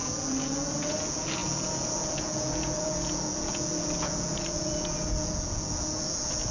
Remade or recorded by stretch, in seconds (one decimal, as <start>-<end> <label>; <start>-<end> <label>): 0.0-6.5 remade